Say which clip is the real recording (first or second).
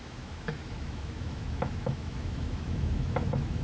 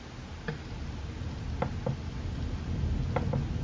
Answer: second